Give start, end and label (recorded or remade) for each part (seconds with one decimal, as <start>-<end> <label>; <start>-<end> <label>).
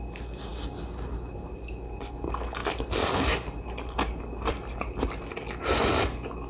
0.0-6.5 recorded